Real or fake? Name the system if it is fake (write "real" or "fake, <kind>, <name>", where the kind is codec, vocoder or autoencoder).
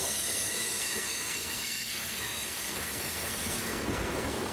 fake, codec, SNAC